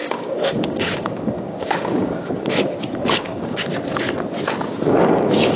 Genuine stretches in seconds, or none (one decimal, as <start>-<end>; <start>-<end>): 3.7-4.6